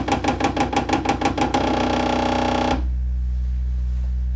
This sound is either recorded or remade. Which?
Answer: recorded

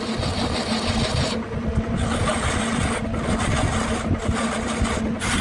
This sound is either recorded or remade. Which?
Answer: recorded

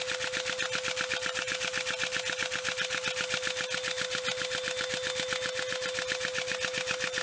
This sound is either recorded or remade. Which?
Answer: recorded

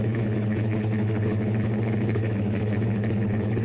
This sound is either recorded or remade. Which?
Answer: remade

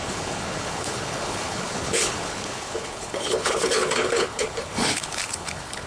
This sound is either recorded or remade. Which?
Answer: remade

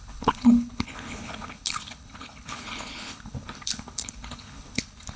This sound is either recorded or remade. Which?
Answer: remade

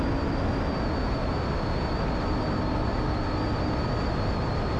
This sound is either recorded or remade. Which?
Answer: recorded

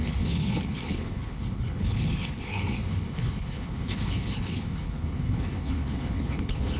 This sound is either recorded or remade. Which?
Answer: remade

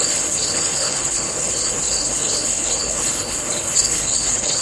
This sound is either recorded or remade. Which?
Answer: remade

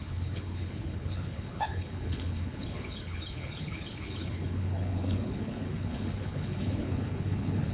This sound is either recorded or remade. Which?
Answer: remade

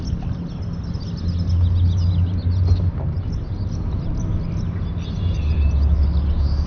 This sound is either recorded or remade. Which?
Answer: recorded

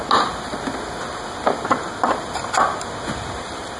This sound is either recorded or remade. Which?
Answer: recorded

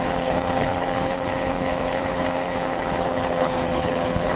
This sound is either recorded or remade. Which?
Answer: remade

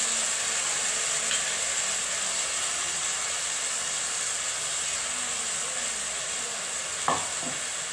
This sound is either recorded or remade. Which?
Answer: recorded